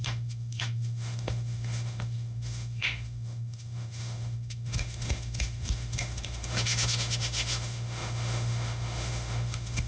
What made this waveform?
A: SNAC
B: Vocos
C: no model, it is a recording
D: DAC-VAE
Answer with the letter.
D